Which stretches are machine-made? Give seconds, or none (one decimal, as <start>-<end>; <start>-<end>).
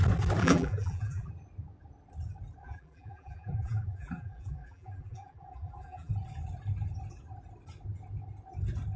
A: 0.4-1.3; 2.6-6.1